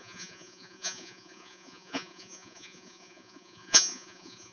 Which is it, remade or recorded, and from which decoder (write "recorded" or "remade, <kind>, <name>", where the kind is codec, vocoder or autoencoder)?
remade, vocoder, Vocos